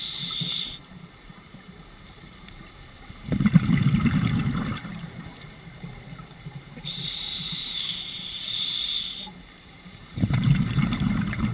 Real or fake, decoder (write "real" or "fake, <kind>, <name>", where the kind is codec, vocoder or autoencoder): fake, vocoder, BigVGAN v2